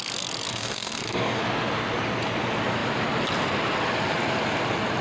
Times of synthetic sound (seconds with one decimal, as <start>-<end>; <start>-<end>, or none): 0.5-1.4